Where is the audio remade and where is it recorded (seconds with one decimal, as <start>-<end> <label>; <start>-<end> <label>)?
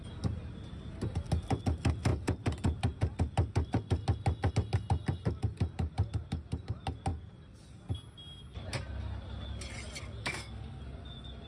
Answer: 0.0-10.2 recorded; 10.2-10.8 remade; 10.8-11.5 recorded